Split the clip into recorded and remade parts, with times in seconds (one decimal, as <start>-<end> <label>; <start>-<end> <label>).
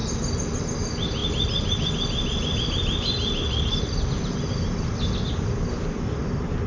0.0-6.7 recorded